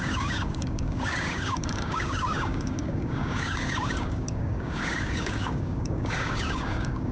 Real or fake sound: fake